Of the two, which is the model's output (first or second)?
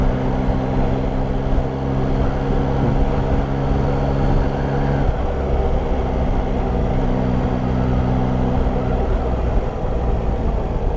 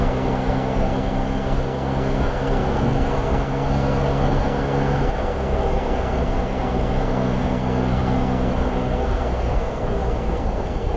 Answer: second